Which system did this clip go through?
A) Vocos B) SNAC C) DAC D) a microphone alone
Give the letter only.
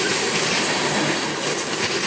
D